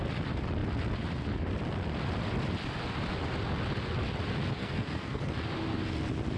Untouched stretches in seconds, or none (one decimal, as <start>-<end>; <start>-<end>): 0.0-4.6; 5.3-6.4